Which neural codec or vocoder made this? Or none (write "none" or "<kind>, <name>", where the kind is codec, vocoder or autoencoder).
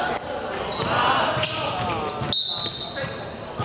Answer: none